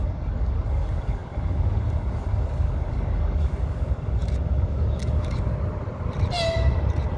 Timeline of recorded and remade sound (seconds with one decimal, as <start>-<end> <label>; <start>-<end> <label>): 0.0-5.5 remade; 5.5-7.2 recorded